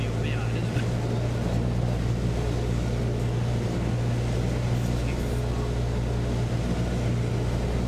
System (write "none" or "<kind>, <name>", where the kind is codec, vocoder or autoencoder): none